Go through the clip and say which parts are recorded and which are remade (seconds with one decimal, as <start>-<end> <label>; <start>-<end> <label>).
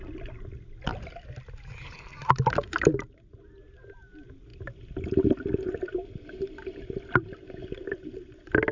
0.0-8.7 recorded